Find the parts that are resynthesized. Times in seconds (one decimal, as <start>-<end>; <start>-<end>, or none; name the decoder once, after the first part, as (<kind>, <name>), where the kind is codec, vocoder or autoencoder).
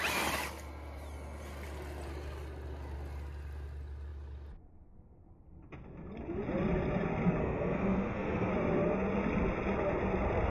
7.4-8.5 (codec, SNAC)